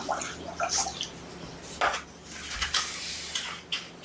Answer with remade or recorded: recorded